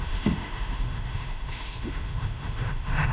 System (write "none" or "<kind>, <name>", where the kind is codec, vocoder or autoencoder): autoencoder, DAC-VAE